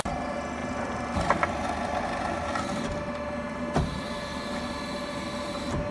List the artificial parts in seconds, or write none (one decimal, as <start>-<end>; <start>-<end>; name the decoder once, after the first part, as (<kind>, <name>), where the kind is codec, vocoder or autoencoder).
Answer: none